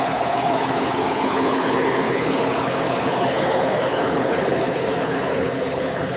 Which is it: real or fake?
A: fake